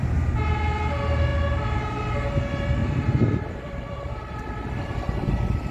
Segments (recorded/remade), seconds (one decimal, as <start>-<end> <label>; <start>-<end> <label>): 0.0-2.8 recorded; 2.8-5.7 remade